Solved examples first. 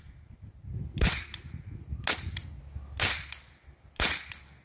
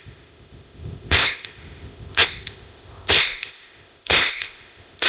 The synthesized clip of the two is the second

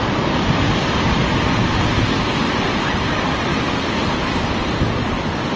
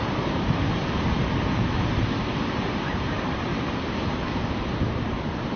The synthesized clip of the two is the second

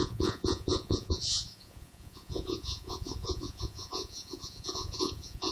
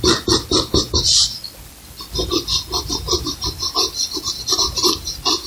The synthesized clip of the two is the first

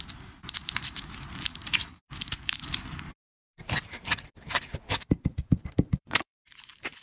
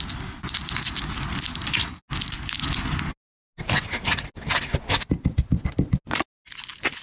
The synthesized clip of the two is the first